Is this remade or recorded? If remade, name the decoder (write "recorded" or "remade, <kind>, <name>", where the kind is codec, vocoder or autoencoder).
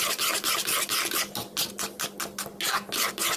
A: recorded